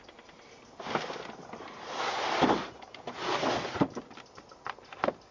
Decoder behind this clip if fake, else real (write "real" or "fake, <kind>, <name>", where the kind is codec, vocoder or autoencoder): real